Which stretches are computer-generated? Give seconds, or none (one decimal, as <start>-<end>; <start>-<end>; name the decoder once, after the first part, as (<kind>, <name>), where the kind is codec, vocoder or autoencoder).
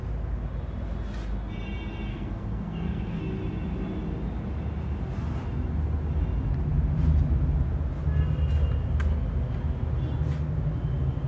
2.1-3.2 (codec, SNAC)